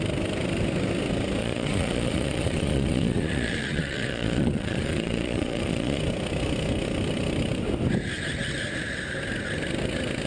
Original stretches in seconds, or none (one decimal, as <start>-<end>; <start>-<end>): 0.0-1.4; 6.0-10.3

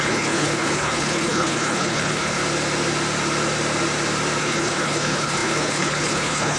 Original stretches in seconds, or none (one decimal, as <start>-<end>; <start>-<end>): 2.4-4.4

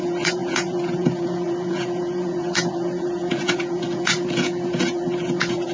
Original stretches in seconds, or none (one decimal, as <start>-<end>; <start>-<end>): none